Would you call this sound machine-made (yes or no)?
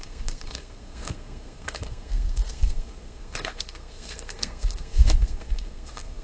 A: yes